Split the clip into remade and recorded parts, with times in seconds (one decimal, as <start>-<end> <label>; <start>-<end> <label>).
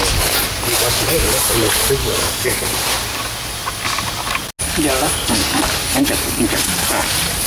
0.0-2.0 recorded; 2.0-2.7 remade; 2.7-7.5 recorded